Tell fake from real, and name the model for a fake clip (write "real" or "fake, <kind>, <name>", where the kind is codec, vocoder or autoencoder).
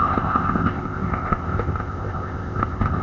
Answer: fake, codec, ZipCodec